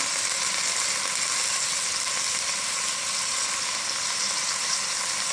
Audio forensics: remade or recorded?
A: recorded